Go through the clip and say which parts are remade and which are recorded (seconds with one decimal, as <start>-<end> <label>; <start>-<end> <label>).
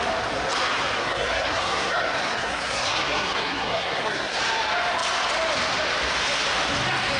0.0-1.0 recorded; 1.0-4.4 remade; 4.4-7.2 recorded